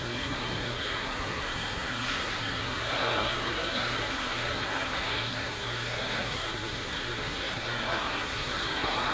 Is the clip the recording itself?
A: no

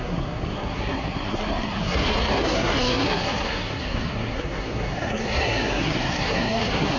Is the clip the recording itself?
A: no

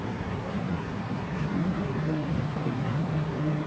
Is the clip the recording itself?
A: no